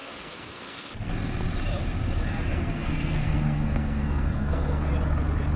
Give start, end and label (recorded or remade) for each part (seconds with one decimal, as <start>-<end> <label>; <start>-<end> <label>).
0.0-1.1 remade; 1.1-2.5 recorded; 2.5-4.9 remade; 4.9-5.6 recorded